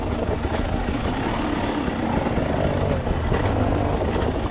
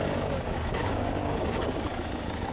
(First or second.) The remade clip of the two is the second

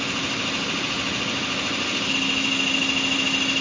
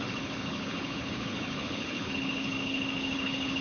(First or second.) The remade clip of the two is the second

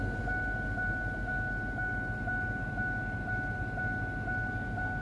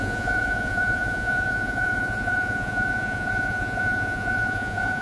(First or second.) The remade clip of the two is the second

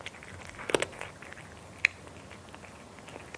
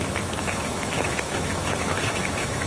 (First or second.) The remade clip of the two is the second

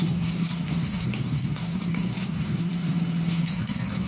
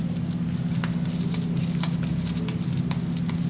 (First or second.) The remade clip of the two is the first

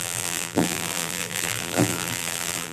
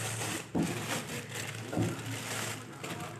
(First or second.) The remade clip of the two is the first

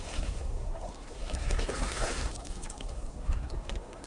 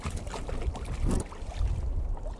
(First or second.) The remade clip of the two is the first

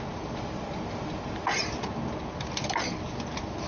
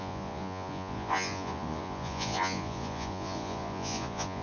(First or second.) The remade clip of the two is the second